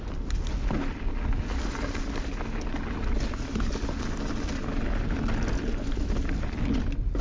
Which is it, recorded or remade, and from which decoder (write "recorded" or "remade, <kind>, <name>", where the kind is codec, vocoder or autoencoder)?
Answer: recorded